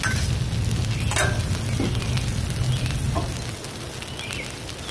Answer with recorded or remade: recorded